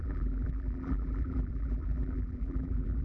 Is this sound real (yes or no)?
no